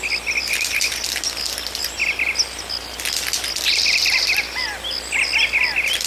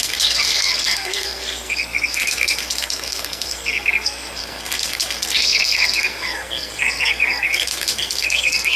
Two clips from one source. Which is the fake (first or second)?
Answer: second